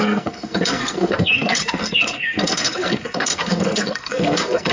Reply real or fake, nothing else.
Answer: fake